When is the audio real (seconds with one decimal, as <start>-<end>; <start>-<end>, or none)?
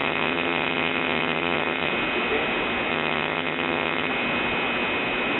1.9-2.9; 4.1-5.4